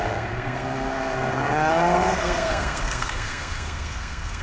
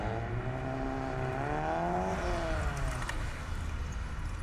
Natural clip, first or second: second